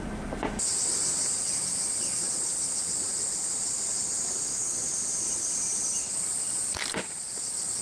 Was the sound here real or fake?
fake